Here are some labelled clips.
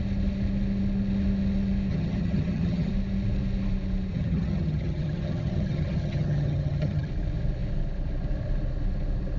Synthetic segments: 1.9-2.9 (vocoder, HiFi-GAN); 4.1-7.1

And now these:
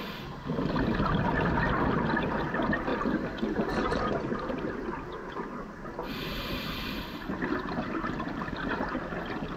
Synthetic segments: none

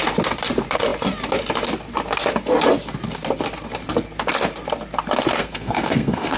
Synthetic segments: 5.4-6.4 (codec, SNAC)